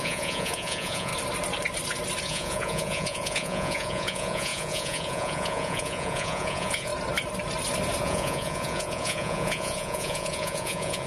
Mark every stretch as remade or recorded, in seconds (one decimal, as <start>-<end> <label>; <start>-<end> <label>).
0.0-1.1 remade; 1.1-2.2 recorded; 2.2-6.9 remade; 6.9-8.0 recorded; 8.0-11.1 remade